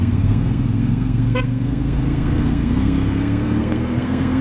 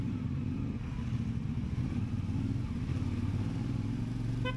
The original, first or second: second